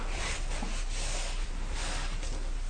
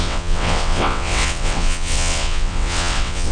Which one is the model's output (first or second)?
second